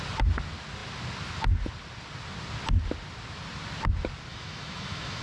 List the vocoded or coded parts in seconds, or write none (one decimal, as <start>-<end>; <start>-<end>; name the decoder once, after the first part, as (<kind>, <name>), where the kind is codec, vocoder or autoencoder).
4.3-5.2 (autoencoder, DAC-VAE)